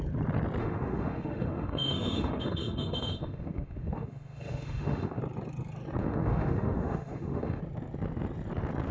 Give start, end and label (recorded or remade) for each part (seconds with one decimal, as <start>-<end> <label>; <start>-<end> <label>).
0.0-0.6 recorded; 0.6-5.2 remade; 5.2-6.0 recorded; 6.0-7.6 remade; 7.6-8.9 recorded